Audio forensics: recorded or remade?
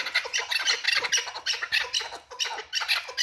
recorded